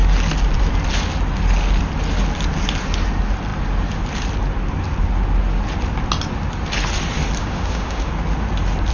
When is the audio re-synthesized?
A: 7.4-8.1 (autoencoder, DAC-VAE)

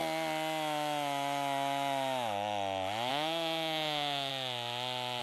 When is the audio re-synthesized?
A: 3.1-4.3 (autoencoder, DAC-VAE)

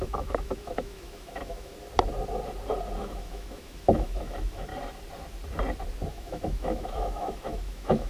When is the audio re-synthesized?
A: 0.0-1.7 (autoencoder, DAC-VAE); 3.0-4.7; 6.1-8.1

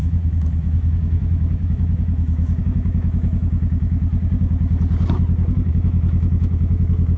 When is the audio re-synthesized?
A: 0.0-4.1 (autoencoder, DAC-VAE); 5.7-7.2

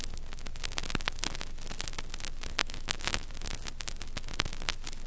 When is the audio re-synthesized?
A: 2.6-3.3 (autoencoder, DAC-VAE)